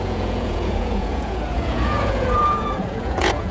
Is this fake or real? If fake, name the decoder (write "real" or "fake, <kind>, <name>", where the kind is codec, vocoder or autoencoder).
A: fake, vocoder, Vocos